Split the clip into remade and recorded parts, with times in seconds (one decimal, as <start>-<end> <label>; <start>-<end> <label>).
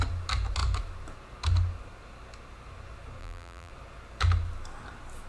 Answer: 0.0-3.2 recorded; 3.2-3.7 remade; 3.7-5.3 recorded